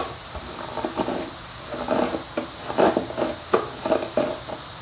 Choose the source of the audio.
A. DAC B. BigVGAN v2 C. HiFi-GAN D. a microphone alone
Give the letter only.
D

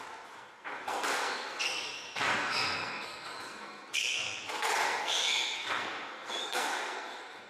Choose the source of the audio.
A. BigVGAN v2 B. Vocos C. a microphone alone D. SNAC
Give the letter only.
D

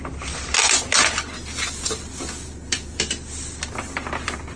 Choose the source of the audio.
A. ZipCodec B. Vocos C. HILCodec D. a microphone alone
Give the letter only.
D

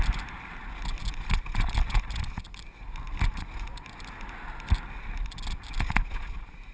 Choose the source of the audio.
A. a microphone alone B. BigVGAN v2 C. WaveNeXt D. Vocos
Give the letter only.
A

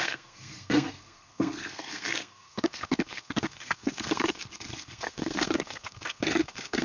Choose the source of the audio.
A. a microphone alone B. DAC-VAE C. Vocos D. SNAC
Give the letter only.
D